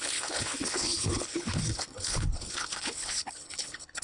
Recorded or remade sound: remade